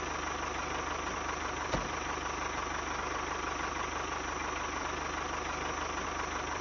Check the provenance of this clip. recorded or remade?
recorded